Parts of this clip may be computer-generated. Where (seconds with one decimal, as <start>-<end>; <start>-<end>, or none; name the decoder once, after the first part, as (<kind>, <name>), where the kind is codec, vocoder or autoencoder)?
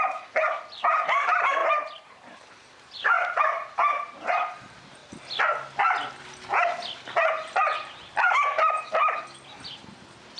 0.0-5.0 (vocoder, BigVGAN v2); 7.3-10.4